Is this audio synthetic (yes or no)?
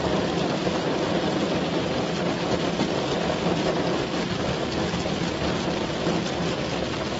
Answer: no